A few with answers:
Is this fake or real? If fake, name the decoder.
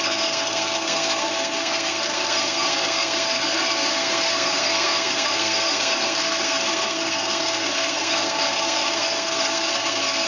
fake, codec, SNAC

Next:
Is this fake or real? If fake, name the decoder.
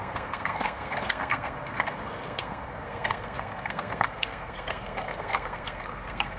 fake, codec, SNAC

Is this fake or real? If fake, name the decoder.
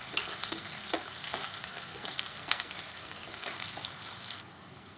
fake, codec, SNAC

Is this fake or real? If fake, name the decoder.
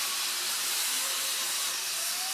real